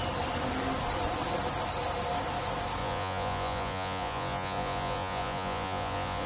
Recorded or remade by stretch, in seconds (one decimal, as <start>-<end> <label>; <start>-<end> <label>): 0.0-2.8 recorded; 2.8-6.3 remade